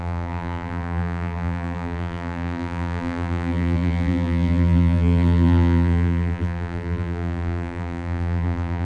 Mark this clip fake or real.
fake